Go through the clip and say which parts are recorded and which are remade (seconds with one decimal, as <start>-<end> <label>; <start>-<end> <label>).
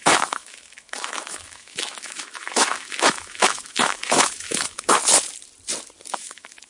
0.0-5.0 remade; 5.0-6.1 recorded; 6.1-6.7 remade